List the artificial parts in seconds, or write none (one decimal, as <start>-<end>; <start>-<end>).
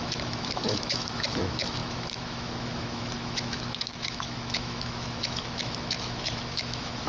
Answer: 0.0-7.1